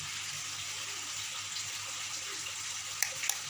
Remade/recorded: recorded